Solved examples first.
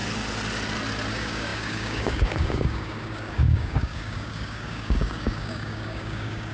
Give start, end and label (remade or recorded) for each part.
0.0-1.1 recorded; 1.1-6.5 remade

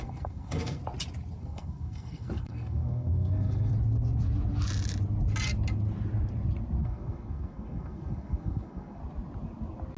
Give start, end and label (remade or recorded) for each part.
0.0-0.8 remade; 0.8-1.4 recorded; 1.4-3.7 remade; 3.7-6.8 recorded; 6.8-9.0 remade; 9.0-10.0 recorded

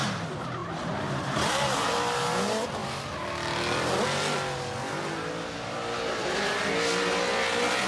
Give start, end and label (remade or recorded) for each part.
0.0-0.6 recorded; 0.6-1.9 remade; 1.9-7.9 recorded